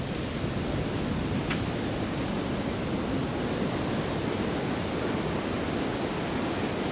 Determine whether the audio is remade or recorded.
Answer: recorded